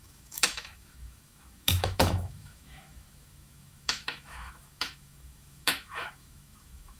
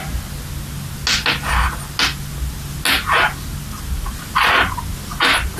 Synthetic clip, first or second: first